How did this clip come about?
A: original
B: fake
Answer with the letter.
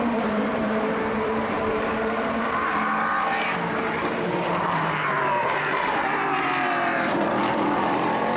B